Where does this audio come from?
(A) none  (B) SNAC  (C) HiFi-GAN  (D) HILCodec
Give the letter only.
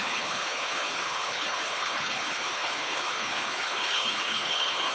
D